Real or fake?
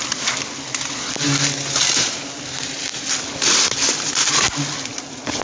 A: real